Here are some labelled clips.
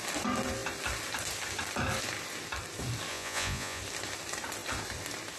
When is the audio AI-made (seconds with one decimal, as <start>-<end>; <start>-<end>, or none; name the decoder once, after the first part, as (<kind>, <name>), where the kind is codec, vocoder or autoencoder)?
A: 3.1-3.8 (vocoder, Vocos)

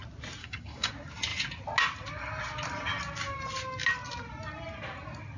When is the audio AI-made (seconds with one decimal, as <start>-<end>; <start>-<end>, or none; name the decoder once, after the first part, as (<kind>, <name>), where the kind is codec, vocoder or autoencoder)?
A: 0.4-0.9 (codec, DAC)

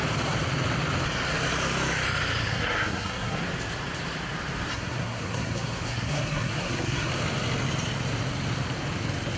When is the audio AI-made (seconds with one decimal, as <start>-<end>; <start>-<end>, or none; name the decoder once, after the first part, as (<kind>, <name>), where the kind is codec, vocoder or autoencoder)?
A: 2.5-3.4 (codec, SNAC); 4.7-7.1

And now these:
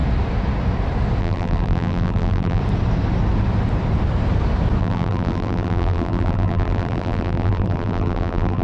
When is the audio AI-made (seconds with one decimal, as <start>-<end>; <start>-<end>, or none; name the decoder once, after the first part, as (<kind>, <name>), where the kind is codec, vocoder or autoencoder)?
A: 1.2-2.6 (vocoder, BigVGAN v2); 4.8-8.6